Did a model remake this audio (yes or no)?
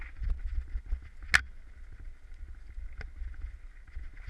no